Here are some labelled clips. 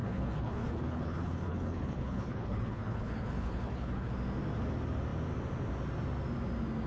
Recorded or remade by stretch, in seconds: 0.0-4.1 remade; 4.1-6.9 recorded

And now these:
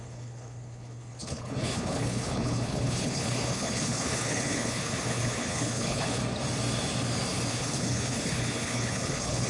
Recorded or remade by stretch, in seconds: 0.0-6.2 remade; 6.2-7.5 recorded; 7.5-9.5 remade

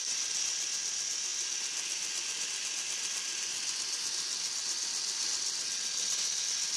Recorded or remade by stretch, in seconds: 0.0-6.8 recorded